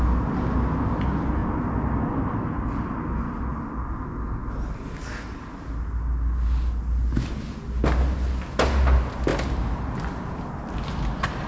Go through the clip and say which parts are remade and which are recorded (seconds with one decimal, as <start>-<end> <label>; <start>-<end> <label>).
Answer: 0.0-11.5 recorded